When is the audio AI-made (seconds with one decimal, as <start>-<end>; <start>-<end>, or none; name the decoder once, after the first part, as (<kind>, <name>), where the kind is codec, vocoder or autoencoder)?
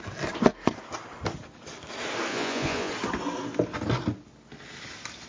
2.3-2.9 (vocoder, Vocos)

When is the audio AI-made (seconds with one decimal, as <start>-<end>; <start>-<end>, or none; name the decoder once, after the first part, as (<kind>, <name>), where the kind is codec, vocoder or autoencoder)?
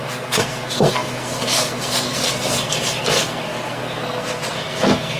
0.0-5.2 (codec, SNAC)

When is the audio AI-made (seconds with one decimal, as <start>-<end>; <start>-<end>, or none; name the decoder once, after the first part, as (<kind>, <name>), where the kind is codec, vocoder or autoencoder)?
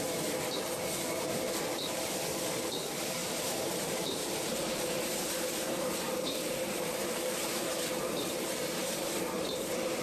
3.2-8.0 (vocoder, BigVGAN v2); 8.8-10.0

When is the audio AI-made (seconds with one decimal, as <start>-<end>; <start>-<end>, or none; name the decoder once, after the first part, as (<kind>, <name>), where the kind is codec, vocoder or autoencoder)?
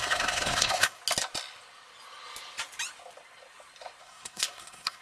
0.0-1.0 (codec, SNAC); 4.0-5.0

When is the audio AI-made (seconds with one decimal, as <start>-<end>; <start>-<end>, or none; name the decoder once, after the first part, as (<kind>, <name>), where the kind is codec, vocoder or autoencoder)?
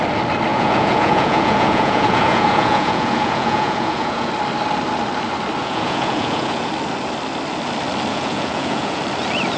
0.5-4.3 (vocoder, Vocos); 5.6-6.7; 8.1-9.0